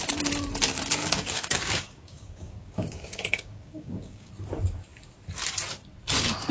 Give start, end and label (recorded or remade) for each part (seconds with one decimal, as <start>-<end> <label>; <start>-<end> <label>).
0.0-1.0 recorded; 1.0-4.3 remade; 4.3-6.5 recorded